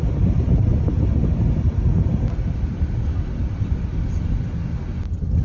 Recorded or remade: remade